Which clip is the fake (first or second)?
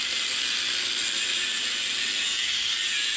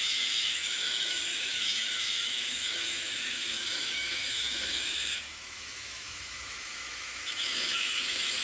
second